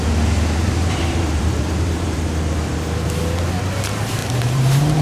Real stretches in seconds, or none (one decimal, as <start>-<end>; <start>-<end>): 0.0-0.6; 2.2-4.2